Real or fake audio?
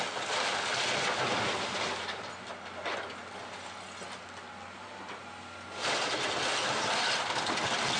real